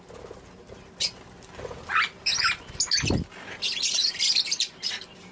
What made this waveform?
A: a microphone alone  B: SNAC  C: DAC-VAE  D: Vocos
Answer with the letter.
A